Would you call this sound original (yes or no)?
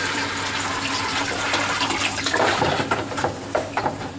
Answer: no